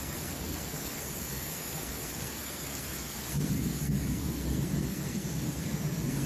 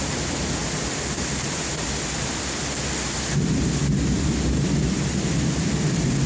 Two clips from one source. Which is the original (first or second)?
second